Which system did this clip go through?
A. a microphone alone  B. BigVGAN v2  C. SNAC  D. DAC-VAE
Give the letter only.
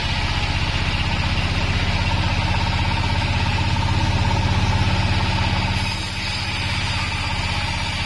A